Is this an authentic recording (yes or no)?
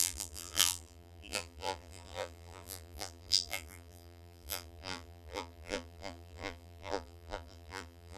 no